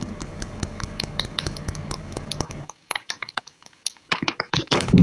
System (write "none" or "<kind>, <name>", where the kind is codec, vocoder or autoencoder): codec, DAC